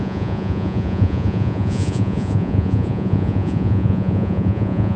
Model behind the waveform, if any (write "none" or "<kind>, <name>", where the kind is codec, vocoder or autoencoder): vocoder, Vocos